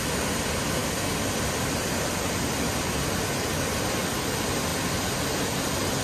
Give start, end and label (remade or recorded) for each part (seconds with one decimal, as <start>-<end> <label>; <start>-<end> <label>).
0.0-6.0 recorded